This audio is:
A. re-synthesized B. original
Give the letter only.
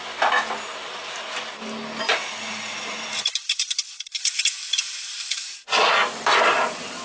B